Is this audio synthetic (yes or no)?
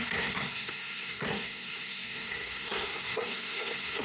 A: yes